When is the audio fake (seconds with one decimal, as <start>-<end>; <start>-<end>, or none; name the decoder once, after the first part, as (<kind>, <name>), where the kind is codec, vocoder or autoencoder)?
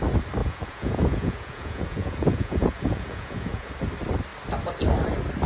0.4-3.7 (vocoder, Vocos)